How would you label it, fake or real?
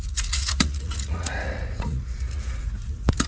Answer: fake